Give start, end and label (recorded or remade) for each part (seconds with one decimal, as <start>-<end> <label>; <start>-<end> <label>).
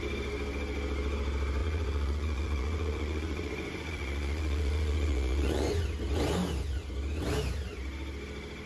0.0-1.6 recorded; 1.6-5.9 remade; 5.9-8.7 recorded